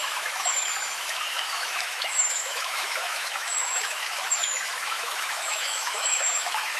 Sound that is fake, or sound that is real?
fake